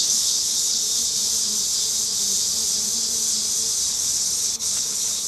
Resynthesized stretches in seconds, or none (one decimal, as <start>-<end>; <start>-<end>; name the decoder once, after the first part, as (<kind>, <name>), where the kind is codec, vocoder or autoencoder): 0.0-0.8 (codec, HILCodec); 3.9-5.3

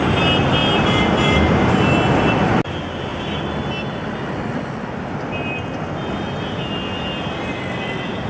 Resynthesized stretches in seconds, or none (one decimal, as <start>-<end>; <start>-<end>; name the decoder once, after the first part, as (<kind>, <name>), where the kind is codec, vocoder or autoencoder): none

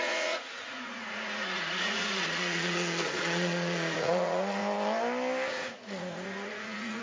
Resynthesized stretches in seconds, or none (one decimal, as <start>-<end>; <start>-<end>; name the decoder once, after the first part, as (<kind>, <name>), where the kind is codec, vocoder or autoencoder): 0.0-4.6 (vocoder, Vocos); 5.5-7.0

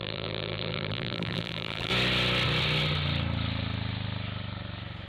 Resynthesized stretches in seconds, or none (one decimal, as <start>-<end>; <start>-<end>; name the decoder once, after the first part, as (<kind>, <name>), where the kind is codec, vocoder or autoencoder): 0.0-1.9 (vocoder, BigVGAN v2)

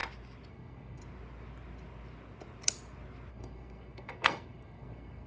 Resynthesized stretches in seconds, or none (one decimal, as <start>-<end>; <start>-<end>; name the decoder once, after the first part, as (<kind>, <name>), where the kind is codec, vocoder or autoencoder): 0.5-1.0 (codec, SNAC); 3.3-5.3

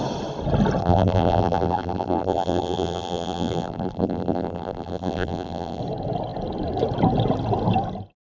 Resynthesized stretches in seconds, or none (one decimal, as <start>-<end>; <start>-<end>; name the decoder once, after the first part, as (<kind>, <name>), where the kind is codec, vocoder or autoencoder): 0.8-5.8 (vocoder, BigVGAN v2)

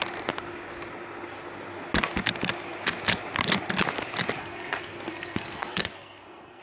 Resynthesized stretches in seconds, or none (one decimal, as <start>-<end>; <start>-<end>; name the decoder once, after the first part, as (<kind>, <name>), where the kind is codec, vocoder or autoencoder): 4.4-6.6 (codec, SNAC)